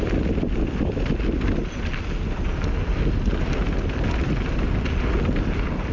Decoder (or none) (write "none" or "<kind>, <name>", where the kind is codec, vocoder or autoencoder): none